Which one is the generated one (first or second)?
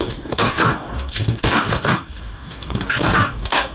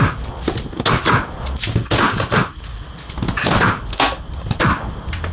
first